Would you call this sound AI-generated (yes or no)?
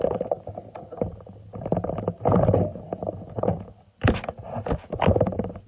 no